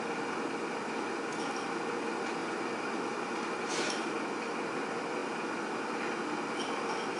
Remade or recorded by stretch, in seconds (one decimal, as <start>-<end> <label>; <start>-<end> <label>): 0.0-2.4 recorded; 2.4-3.7 remade; 3.7-7.2 recorded